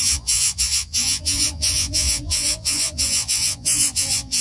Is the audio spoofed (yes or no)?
yes